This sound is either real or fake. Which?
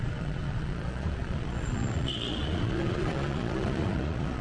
fake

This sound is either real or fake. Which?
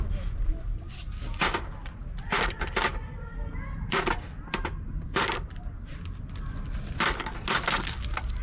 real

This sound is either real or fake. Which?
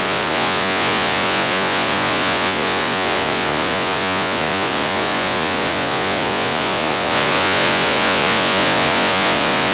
fake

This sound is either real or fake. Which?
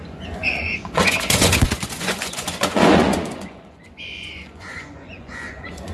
fake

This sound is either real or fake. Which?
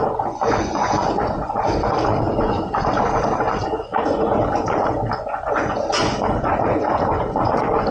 fake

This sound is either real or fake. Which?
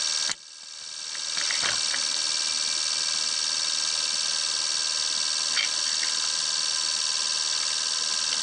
real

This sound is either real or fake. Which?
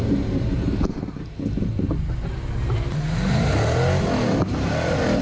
real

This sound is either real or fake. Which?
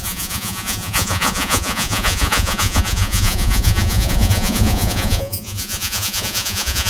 fake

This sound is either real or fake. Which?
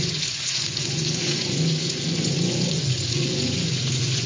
fake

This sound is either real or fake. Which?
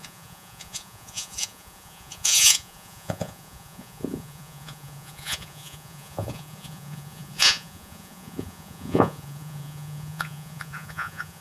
fake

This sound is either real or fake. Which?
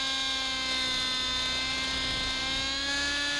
real